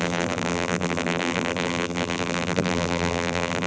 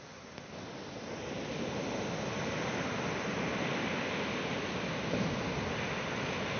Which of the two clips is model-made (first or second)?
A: first